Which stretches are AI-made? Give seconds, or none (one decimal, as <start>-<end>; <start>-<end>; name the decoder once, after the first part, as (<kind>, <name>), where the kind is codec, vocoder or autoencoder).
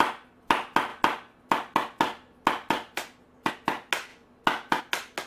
none